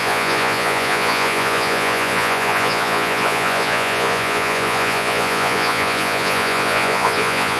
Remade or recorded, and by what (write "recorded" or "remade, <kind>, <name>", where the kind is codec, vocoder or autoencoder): remade, vocoder, Vocos